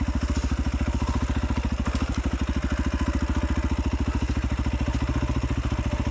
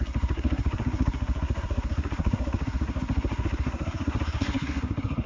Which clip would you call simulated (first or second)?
second